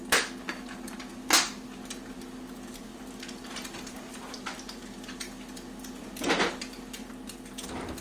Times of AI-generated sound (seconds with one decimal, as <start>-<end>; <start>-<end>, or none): none